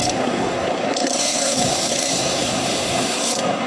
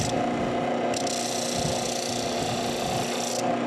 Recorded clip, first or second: second